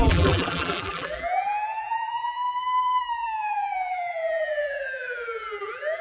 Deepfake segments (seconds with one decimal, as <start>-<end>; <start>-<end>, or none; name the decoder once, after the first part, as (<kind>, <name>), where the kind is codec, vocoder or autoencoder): 0.0-6.0 (vocoder, BigVGAN v2)

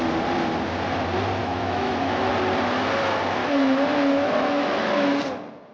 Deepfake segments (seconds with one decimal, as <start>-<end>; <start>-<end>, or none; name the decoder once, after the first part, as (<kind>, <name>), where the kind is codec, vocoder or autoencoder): 1.4-2.3 (autoencoder, DAC-VAE); 3.4-5.2